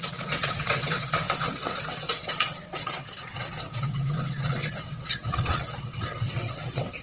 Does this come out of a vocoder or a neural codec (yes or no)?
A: yes